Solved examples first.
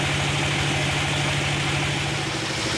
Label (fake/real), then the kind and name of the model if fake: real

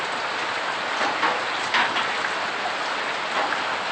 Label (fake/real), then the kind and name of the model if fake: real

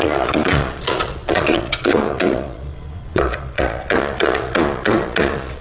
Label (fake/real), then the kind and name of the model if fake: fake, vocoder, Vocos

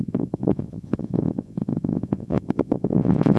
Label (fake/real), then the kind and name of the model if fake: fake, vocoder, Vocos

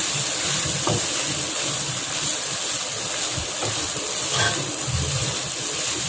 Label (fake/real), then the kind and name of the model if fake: real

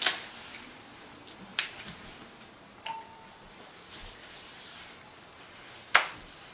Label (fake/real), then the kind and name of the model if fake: real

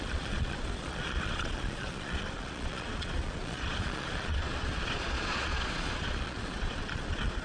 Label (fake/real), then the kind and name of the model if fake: fake, vocoder, Vocos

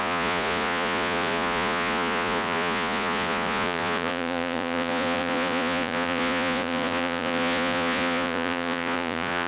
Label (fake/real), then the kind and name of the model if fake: fake, vocoder, Vocos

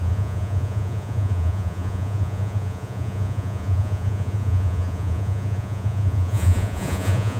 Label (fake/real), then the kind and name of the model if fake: fake, vocoder, Vocos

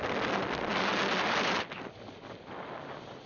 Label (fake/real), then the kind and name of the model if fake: real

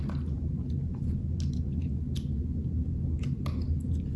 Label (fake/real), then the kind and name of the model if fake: real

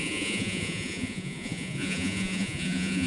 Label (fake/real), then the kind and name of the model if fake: fake, vocoder, Vocos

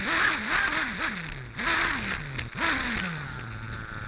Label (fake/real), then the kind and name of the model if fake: real